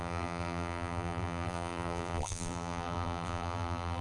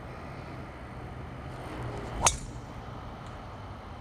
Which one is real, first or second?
second